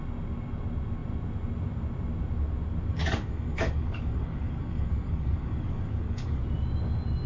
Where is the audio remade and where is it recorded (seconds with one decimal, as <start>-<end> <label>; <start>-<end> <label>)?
0.0-2.9 recorded; 2.9-6.4 remade; 6.4-7.3 recorded